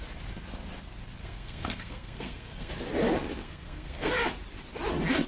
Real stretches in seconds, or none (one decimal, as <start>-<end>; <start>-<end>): 0.0-1.2; 2.7-3.4; 4.1-5.3